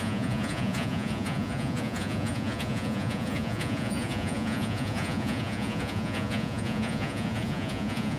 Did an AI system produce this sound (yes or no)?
yes